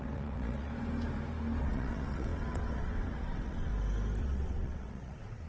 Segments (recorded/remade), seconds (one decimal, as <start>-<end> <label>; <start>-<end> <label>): 0.0-0.7 remade; 0.7-1.6 recorded; 1.6-3.7 remade; 3.7-4.2 recorded; 4.2-5.5 remade